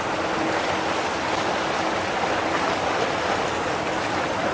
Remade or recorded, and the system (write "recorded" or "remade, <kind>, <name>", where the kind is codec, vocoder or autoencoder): recorded